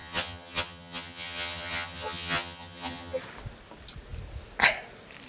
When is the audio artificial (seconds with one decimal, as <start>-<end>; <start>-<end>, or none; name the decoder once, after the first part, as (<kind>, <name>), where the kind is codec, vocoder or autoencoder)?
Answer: 0.0-3.2 (vocoder, HiFi-GAN)